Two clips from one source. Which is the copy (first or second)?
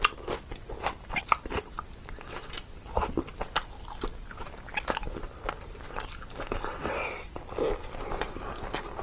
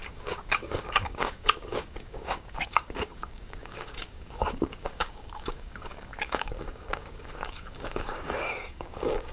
second